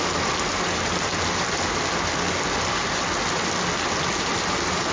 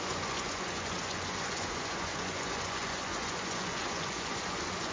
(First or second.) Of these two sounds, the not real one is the second